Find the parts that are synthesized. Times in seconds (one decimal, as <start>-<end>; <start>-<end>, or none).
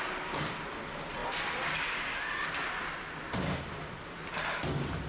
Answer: none